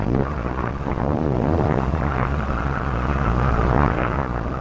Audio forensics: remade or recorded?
remade